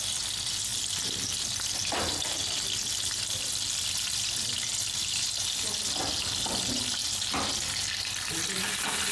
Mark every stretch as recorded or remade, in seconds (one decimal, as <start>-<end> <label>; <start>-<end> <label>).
0.0-9.1 recorded